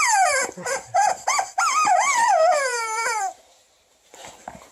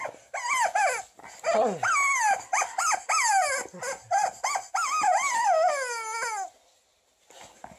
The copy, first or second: first